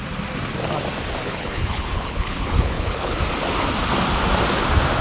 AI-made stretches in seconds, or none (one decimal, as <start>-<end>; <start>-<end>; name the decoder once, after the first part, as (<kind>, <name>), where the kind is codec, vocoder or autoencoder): 1.2-3.2 (codec, HILCodec)